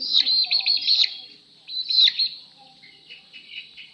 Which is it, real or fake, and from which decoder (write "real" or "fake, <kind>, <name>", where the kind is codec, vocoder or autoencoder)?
real